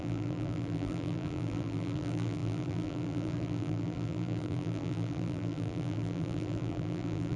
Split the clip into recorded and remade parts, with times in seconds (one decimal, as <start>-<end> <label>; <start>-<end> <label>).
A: 0.0-7.4 remade